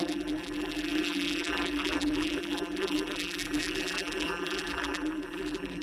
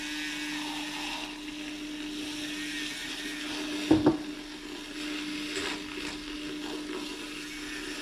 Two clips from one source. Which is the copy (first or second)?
first